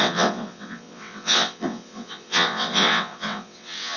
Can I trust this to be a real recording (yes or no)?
no